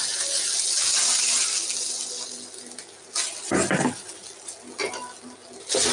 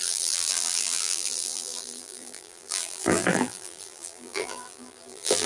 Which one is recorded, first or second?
first